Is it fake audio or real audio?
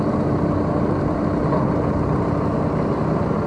real